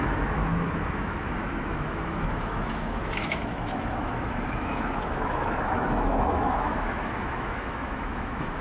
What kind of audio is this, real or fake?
fake